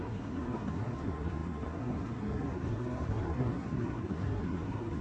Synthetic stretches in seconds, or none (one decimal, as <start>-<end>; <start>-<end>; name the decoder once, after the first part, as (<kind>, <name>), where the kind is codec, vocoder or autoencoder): 0.0-5.0 (codec, SNAC)